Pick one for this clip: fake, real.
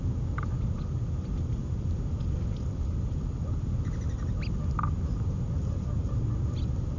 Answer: real